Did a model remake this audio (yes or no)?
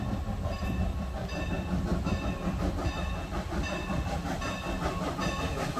no